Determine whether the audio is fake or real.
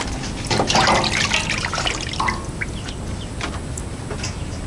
real